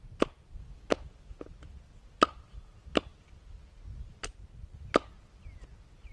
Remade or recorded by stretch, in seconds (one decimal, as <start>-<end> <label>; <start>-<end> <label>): 0.0-6.1 recorded